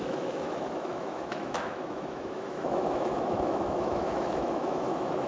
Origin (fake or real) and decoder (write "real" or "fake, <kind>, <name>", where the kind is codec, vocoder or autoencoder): fake, autoencoder, DAC-VAE